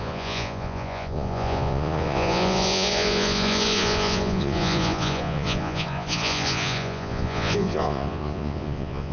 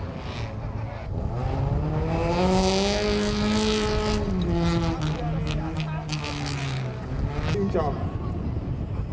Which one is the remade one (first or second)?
first